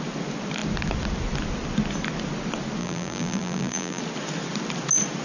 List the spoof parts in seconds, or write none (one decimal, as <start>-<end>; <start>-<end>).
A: 2.8-4.0